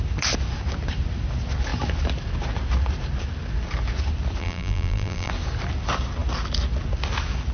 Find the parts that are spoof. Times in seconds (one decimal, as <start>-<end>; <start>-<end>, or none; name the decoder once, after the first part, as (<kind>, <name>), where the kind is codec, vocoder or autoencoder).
4.4-5.3 (vocoder, BigVGAN v2)